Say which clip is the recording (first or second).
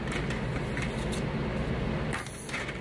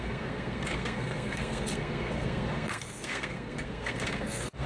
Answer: first